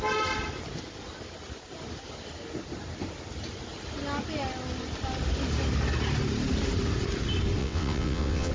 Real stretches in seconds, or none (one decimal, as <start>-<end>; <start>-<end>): 0.0-7.6